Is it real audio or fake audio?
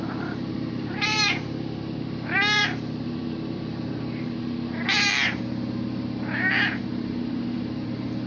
fake